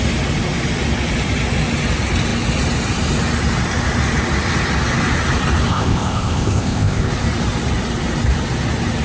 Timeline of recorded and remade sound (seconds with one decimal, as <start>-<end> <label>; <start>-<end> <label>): 0.0-5.7 recorded; 5.7-7.1 remade; 7.1-9.0 recorded